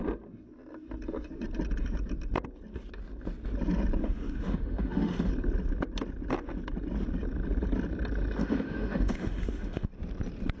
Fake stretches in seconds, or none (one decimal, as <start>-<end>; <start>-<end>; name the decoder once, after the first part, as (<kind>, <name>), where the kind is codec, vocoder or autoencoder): 4.0-5.3 (autoencoder, DAC-VAE); 8.4-9.9